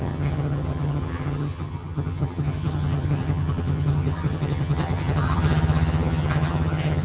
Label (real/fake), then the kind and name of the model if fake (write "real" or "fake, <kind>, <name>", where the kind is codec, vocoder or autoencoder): fake, vocoder, HiFi-GAN